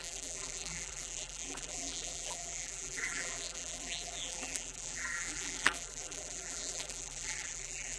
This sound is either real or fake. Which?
fake